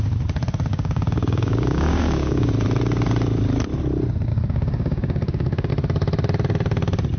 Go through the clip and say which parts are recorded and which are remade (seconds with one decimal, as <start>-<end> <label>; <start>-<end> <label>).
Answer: 0.0-0.7 recorded; 0.7-2.5 remade; 2.5-4.3 recorded; 4.3-5.7 remade; 5.7-7.2 recorded